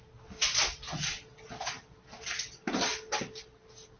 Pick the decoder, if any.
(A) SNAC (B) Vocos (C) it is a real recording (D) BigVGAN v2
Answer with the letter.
C